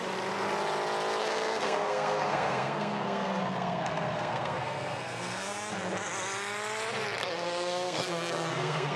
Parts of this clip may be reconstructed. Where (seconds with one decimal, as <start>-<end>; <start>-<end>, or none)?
1.2-5.7; 7.2-9.0